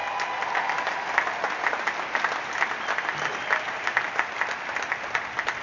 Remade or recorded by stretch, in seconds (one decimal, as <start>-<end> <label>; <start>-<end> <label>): 0.0-5.6 recorded